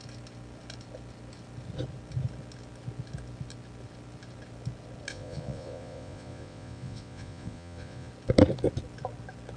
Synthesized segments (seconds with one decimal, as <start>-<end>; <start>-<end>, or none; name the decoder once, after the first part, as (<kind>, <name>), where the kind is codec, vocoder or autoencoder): 5.1-8.1 (vocoder, Vocos)

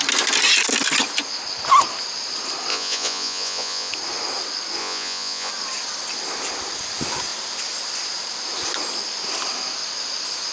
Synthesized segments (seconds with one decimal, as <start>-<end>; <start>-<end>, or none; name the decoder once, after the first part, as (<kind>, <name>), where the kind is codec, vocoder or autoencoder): 2.7-3.9 (vocoder, Vocos); 4.8-5.5